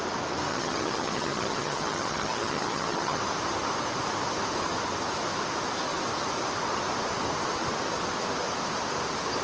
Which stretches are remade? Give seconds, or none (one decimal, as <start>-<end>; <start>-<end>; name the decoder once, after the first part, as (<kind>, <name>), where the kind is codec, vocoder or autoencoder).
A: 0.5-3.2 (vocoder, HiFi-GAN)